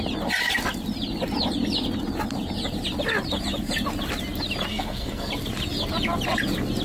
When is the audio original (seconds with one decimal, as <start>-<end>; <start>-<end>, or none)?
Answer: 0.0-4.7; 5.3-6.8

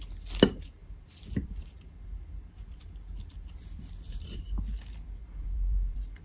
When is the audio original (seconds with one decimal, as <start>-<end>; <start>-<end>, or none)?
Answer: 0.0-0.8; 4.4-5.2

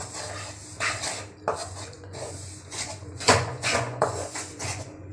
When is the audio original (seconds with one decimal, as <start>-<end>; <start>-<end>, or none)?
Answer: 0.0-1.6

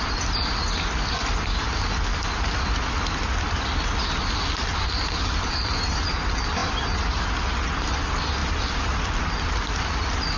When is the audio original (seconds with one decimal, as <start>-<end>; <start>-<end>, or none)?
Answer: 0.0-4.7; 6.1-6.6; 7.2-8.4; 9.0-10.4

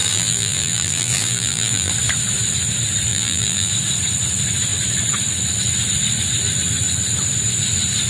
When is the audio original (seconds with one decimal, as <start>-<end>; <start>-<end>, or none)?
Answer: 1.9-3.1; 3.7-8.1